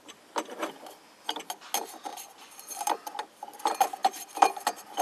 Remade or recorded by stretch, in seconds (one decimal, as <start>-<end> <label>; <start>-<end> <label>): 0.0-2.1 recorded; 2.1-3.6 remade; 3.6-4.0 recorded; 4.0-4.5 remade; 4.5-5.0 recorded